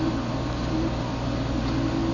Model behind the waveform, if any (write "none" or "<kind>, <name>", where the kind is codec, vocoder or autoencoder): none